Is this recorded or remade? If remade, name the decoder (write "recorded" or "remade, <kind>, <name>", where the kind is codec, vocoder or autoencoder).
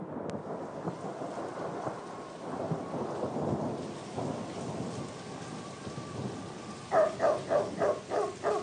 recorded